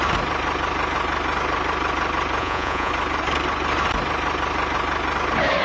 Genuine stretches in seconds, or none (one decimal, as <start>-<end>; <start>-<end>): 0.0-2.4; 2.9-5.6